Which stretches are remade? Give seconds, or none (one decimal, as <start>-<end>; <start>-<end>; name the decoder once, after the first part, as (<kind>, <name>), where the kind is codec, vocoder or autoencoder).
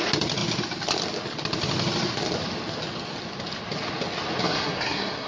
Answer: 4.4-5.3 (codec, SNAC)